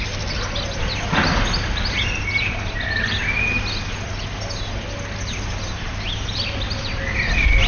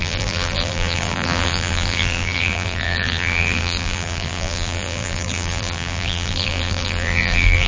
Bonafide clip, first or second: first